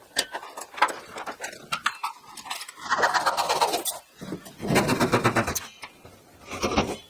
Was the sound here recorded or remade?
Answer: recorded